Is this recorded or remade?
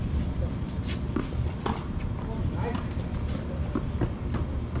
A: recorded